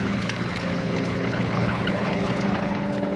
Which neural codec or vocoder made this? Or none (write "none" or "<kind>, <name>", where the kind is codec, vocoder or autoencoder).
codec, HILCodec